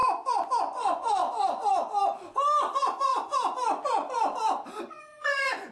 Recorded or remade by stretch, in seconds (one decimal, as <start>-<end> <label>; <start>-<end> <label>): 0.0-0.6 recorded; 0.6-1.2 remade; 1.2-2.7 recorded; 2.7-3.1 remade; 3.1-4.8 recorded; 4.8-5.7 remade